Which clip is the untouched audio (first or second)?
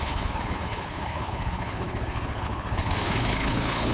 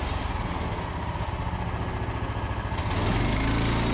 second